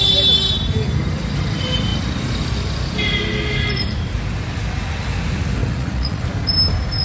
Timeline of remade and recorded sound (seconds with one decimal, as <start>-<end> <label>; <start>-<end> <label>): 0.0-5.6 recorded; 5.6-6.2 remade; 6.2-7.0 recorded